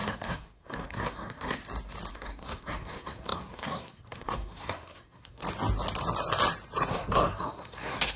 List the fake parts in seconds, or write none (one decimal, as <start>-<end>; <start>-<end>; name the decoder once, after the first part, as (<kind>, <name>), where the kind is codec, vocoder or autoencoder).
0.0-1.6 (codec, SNAC); 2.1-5.4; 6.9-8.2